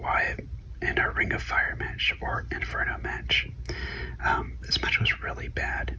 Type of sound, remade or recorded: recorded